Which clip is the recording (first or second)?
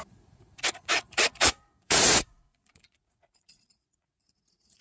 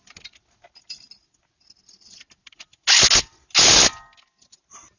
second